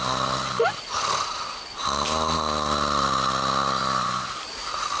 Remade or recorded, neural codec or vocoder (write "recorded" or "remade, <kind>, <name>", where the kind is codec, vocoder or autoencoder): recorded